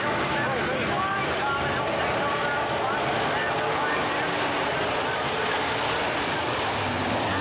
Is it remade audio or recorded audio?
recorded